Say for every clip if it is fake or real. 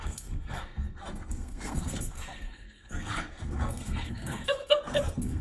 fake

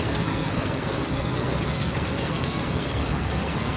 fake